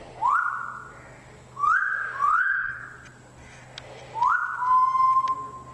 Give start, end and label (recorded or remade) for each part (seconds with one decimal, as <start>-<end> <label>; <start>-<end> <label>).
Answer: 0.0-2.3 recorded; 2.3-2.8 remade; 2.8-5.7 recorded